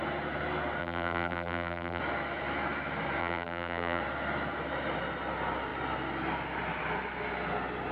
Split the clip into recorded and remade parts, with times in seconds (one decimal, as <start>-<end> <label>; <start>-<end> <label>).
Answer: 0.0-0.8 recorded; 0.8-2.0 remade; 2.0-3.2 recorded; 3.2-4.0 remade; 4.0-7.9 recorded